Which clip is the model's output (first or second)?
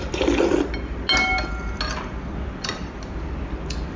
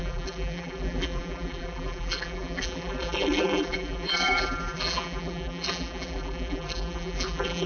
second